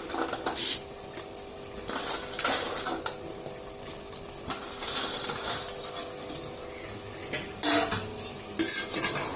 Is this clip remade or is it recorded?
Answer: recorded